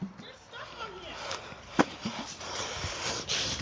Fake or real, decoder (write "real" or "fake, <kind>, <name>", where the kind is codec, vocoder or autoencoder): real